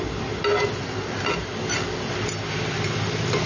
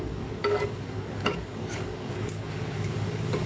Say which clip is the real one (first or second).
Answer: first